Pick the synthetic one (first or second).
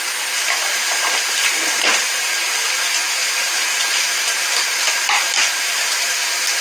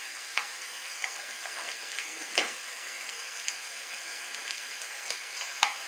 second